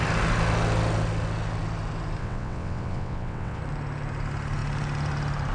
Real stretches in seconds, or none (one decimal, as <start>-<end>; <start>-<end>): 0.0-2.2; 3.6-5.5